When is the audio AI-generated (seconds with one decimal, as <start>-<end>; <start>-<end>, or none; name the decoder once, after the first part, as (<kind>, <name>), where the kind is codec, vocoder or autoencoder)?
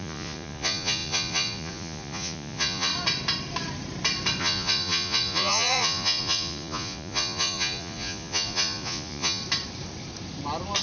0.0-2.9 (vocoder, Vocos); 4.4-9.4